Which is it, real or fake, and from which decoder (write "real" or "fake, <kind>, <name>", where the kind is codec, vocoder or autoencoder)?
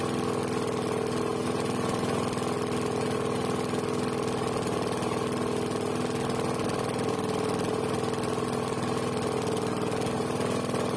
real